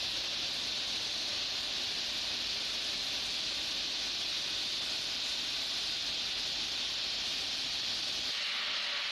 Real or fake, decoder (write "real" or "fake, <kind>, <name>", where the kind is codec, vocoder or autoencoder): real